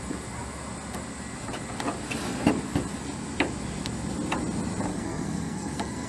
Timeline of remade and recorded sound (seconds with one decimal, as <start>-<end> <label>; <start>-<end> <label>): 0.0-4.9 recorded; 4.9-6.1 remade